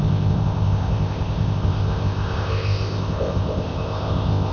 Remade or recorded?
remade